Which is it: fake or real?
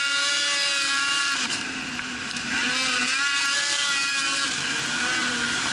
fake